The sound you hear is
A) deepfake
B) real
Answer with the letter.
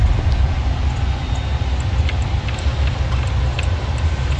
B